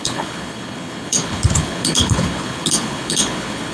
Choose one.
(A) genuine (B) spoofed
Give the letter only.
B